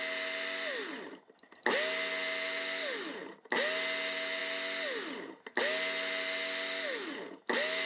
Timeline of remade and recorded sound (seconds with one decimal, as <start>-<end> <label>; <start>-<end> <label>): 0.0-7.9 recorded

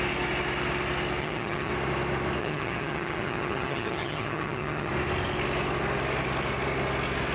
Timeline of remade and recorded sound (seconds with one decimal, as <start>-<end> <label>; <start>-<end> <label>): 0.0-1.2 recorded; 1.2-1.7 remade; 1.7-2.4 recorded; 2.4-4.9 remade; 4.9-7.3 recorded

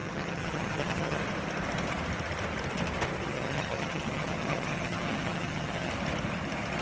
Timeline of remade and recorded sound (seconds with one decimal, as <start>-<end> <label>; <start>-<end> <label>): 0.0-1.2 remade; 1.2-3.3 recorded; 3.3-5.9 remade; 5.9-6.8 recorded

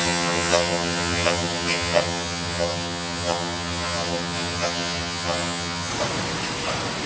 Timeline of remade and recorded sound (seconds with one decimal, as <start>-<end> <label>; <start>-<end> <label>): 0.0-5.9 remade; 5.9-7.1 recorded

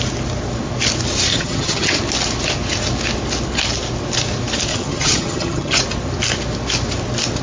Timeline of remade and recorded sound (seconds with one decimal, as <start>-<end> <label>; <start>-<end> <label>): 0.0-1.3 recorded; 1.3-1.9 remade; 1.9-4.7 recorded; 4.7-5.8 remade; 5.8-7.4 recorded

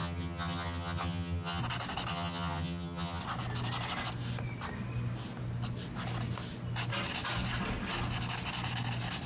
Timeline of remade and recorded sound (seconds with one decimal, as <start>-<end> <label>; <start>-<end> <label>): 0.0-1.6 remade; 1.6-2.1 recorded; 2.1-3.2 remade; 3.2-9.3 recorded

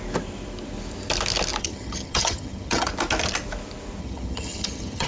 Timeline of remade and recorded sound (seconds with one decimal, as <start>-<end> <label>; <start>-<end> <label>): 0.0-1.6 recorded; 1.6-2.9 remade; 2.9-4.0 recorded; 4.0-5.1 remade

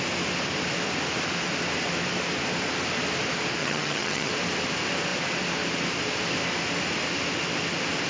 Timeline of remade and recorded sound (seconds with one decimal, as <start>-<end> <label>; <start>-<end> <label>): 0.0-3.6 recorded; 3.6-4.3 remade; 4.3-8.1 recorded